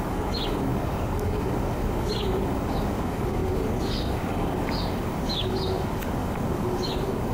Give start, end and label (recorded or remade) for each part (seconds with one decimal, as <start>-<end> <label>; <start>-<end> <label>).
0.0-7.3 remade